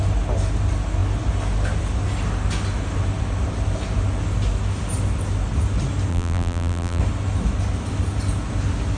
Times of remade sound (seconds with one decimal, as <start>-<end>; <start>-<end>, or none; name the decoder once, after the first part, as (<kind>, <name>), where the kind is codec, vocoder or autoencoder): 6.1-7.0 (vocoder, BigVGAN v2)